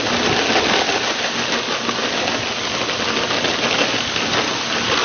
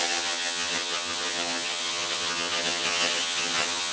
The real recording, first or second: first